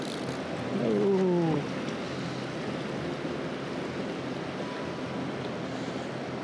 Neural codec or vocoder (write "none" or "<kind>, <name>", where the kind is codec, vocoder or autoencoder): none